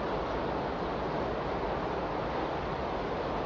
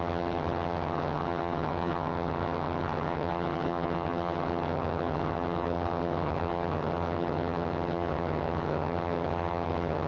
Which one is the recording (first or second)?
first